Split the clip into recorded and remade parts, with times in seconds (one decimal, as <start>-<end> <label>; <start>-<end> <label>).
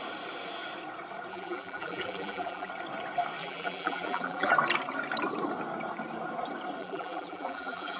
0.0-1.3 recorded; 1.3-2.7 remade; 2.7-3.4 recorded; 3.4-4.5 remade; 4.5-6.8 recorded; 6.8-8.0 remade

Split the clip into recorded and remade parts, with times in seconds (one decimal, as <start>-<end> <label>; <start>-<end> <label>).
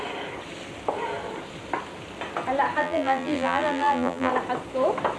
0.0-2.8 recorded; 2.8-4.3 remade; 4.3-5.2 recorded